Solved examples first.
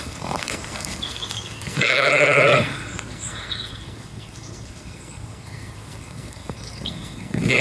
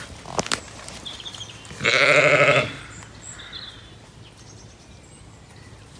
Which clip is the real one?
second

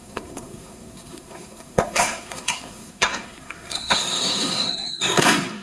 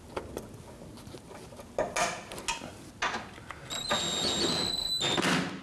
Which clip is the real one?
second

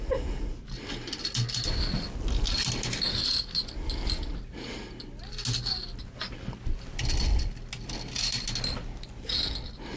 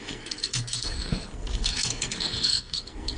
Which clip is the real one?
first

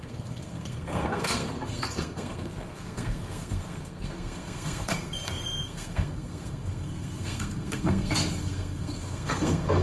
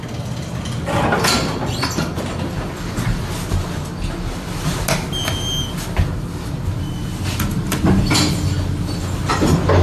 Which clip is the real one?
second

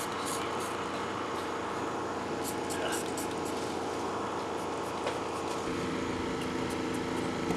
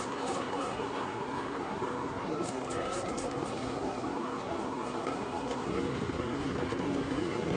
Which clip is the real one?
first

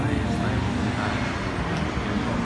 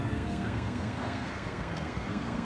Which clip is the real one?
first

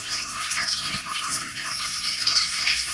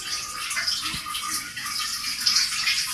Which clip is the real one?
second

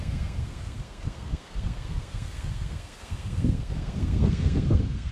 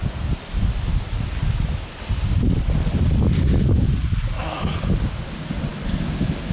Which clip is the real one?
second